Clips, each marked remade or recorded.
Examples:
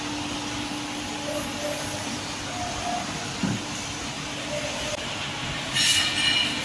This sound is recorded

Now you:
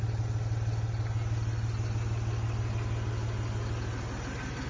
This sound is recorded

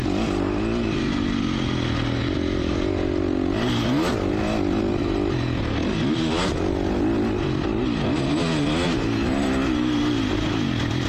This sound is recorded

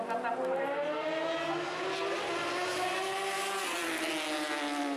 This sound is recorded